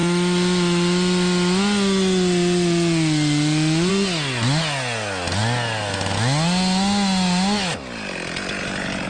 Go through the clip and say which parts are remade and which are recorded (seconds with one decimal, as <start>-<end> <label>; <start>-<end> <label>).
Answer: 0.0-9.1 recorded